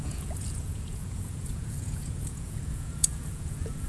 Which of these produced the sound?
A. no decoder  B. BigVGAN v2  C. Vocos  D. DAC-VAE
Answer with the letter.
C